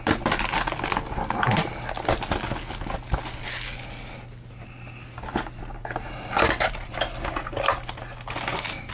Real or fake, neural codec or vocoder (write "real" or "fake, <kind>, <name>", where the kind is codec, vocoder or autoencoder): real